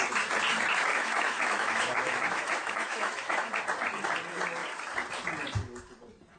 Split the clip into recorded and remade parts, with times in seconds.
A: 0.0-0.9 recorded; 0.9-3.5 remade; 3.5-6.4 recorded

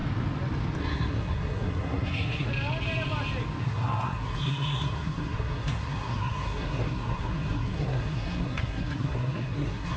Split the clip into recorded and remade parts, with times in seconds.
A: 0.0-0.8 recorded; 0.8-2.5 remade; 2.5-3.6 recorded; 3.6-10.0 remade

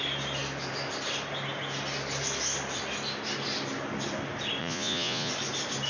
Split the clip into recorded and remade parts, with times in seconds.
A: 0.0-4.6 recorded; 4.6-5.3 remade; 5.3-5.9 recorded

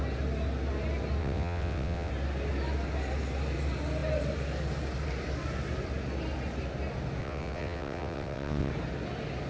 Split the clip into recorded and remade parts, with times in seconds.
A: 0.0-1.2 recorded; 1.2-2.1 remade; 2.1-7.2 recorded; 7.2-8.7 remade; 8.7-9.5 recorded

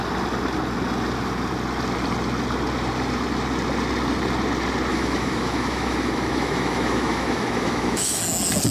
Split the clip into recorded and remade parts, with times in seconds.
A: 0.0-4.9 recorded; 4.9-8.2 remade; 8.2-8.7 recorded

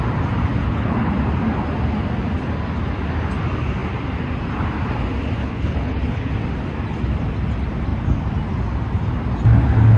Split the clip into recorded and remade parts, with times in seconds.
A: 0.0-0.6 recorded; 0.6-1.1 remade; 1.1-5.4 recorded; 5.4-6.3 remade; 6.3-10.0 recorded

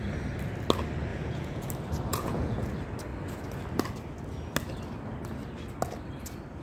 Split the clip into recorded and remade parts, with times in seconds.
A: 0.0-1.1 recorded; 1.1-1.7 remade; 1.7-2.1 recorded; 2.1-2.7 remade; 2.7-6.6 recorded